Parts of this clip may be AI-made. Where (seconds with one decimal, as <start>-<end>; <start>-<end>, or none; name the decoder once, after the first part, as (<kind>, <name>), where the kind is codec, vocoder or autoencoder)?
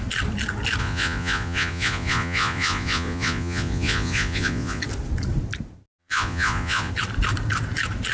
0.8-4.8 (vocoder, Vocos); 6.0-6.9